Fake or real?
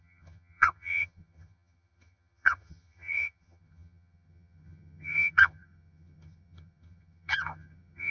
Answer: fake